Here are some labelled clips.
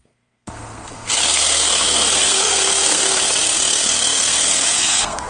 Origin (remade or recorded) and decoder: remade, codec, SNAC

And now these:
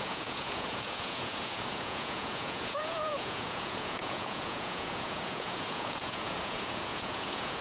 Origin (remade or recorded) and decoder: remade, vocoder, Vocos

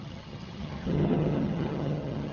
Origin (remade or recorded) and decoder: remade, vocoder, HiFi-GAN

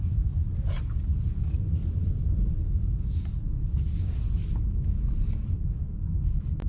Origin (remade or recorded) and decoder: recorded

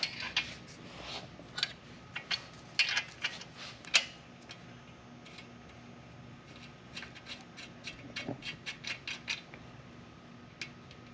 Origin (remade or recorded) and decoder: recorded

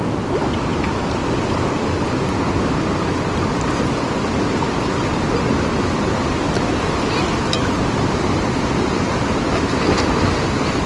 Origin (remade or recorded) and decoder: recorded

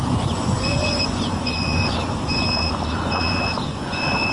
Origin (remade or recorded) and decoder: remade, vocoder, Vocos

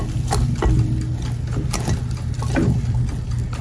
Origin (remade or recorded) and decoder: recorded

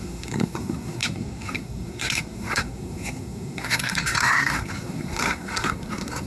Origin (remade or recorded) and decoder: remade, codec, SNAC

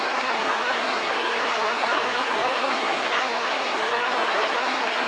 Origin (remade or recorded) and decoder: remade, codec, SNAC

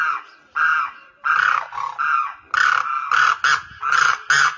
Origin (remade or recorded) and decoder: recorded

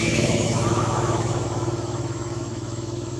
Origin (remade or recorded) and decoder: remade, autoencoder, DAC-VAE